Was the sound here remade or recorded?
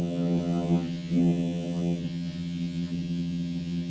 remade